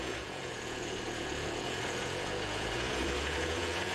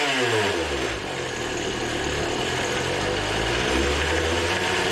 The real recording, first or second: second